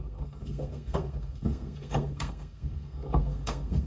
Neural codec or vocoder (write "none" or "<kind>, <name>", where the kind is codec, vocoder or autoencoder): codec, SNAC